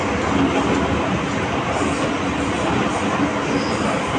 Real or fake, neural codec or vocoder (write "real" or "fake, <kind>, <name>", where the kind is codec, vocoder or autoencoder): real